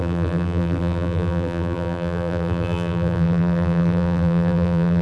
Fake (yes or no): yes